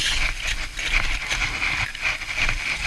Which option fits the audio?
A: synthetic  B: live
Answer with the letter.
B